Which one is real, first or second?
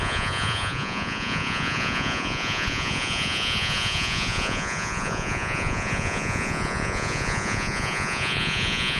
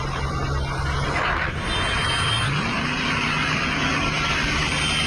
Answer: second